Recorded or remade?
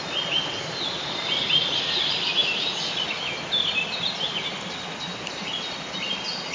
recorded